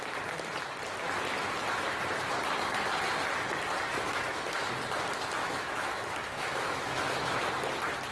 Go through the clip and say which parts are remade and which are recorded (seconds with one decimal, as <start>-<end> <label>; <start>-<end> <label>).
0.0-3.9 recorded; 3.9-4.7 remade; 4.7-5.4 recorded; 5.4-7.5 remade; 7.5-8.1 recorded